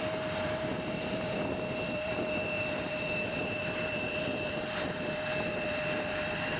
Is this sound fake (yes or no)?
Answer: yes